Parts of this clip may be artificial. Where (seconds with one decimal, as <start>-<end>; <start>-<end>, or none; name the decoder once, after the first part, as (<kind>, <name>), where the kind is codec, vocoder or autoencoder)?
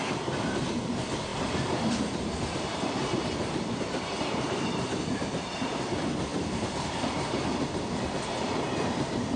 none